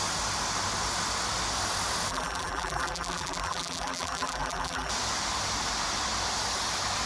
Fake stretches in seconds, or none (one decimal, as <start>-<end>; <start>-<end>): 2.1-4.9